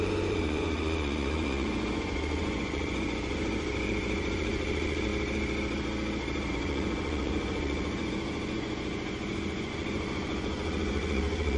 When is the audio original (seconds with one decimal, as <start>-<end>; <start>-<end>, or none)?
5.1-6.5